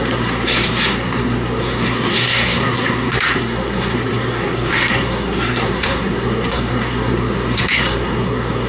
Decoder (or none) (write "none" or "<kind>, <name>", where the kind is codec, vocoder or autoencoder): codec, SNAC